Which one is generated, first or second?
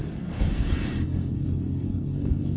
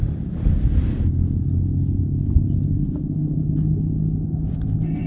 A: first